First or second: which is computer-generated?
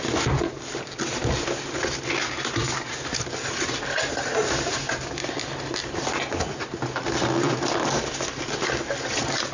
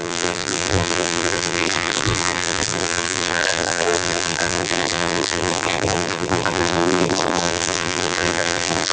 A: second